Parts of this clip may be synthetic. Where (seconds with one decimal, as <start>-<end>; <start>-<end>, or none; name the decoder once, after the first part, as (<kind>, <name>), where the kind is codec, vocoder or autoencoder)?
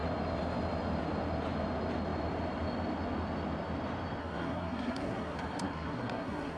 4.2-6.6 (codec, SNAC)